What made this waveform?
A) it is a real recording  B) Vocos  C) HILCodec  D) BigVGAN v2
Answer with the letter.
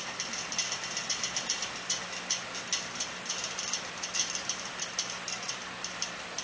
A